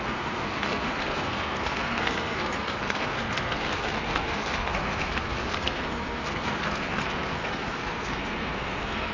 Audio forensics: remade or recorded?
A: remade